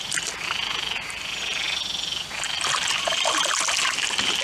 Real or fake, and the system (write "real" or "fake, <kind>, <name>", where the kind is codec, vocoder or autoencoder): fake, vocoder, BigVGAN v2